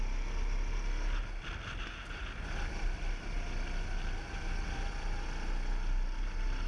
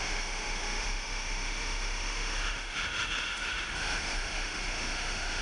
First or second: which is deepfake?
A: second